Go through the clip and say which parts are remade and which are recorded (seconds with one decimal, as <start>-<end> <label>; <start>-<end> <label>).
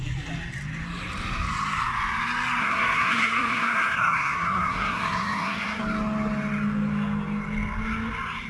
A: 0.0-2.6 recorded; 2.6-5.8 remade; 5.8-8.5 recorded